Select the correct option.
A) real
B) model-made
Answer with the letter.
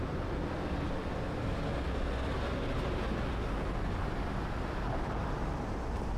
A